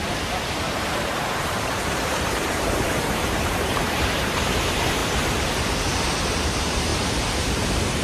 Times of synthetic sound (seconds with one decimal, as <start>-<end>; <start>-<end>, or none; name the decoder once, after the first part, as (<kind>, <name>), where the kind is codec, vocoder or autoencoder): 0.0-5.0 (vocoder, BigVGAN v2); 5.8-6.9; 7.5-8.0